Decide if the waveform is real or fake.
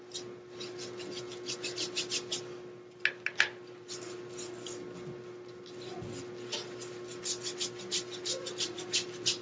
real